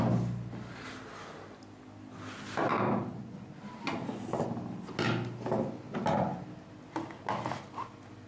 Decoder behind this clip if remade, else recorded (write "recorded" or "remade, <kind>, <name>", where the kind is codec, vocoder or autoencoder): recorded